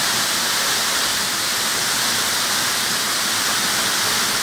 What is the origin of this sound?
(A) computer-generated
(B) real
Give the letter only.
B